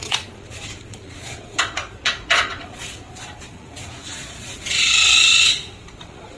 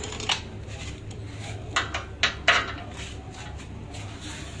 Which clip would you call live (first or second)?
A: second